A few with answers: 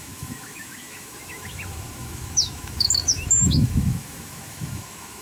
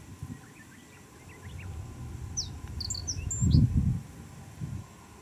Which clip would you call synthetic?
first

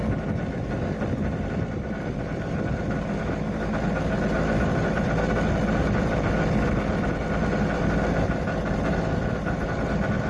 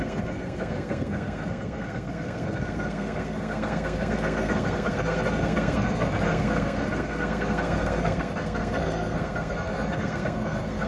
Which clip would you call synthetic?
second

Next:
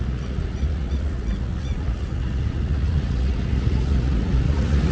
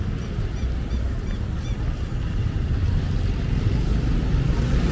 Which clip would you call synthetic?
first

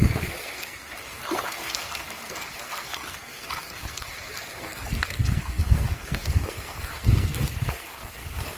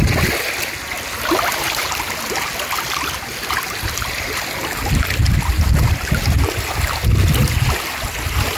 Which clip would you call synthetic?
first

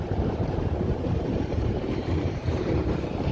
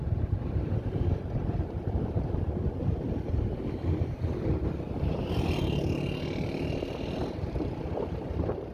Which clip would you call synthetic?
first